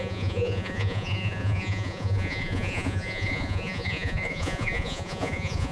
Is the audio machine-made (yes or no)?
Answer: yes